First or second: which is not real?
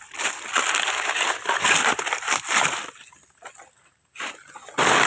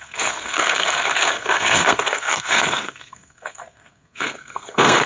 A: second